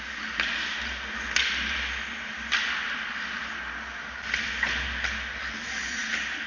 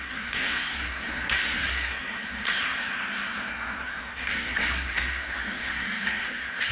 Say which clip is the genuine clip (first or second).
first